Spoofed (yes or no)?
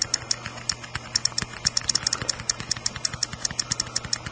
no